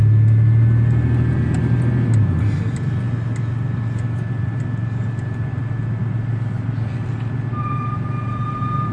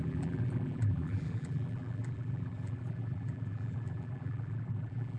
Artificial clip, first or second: second